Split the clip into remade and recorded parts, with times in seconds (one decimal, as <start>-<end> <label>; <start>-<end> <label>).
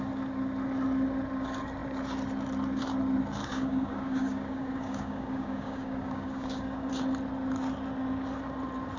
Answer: 0.0-3.4 recorded; 3.4-6.9 remade; 6.9-9.0 recorded